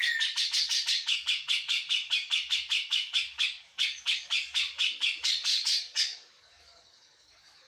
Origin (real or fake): fake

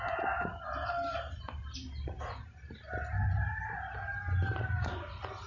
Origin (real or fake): real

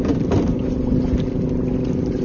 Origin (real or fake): real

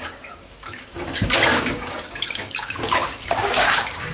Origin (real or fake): fake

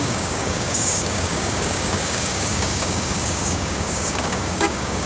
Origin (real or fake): fake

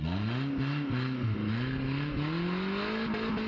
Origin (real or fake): real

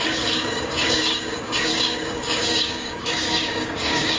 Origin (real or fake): fake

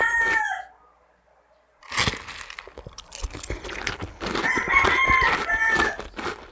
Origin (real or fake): real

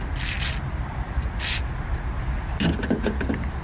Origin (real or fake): real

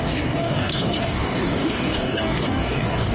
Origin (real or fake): fake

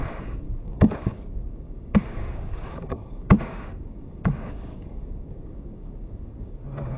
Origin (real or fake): fake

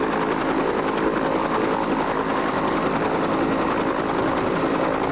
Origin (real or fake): real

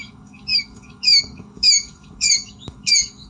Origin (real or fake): fake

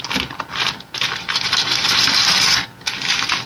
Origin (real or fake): real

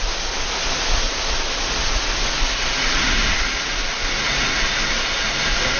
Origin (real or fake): real